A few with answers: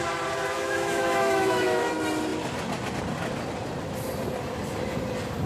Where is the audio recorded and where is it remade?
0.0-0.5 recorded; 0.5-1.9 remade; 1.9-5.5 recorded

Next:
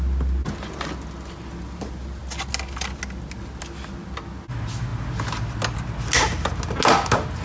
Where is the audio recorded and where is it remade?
0.0-7.4 recorded

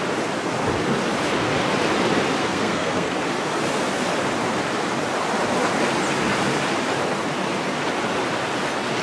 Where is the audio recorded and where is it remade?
0.0-2.4 recorded; 2.4-3.2 remade; 3.2-9.0 recorded